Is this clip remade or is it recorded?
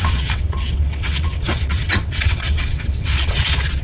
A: remade